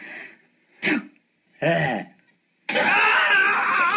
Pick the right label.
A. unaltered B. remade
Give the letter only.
A